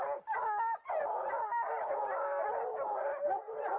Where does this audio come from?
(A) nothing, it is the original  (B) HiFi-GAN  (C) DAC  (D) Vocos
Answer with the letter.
A